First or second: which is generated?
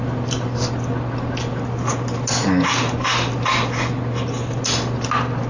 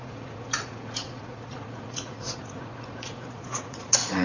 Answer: second